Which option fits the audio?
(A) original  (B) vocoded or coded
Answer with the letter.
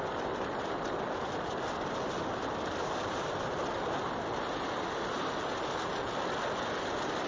A